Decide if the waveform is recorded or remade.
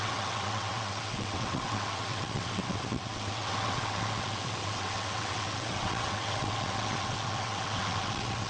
remade